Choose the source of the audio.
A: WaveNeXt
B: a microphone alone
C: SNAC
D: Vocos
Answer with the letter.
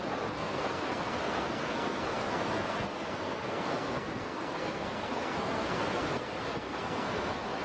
C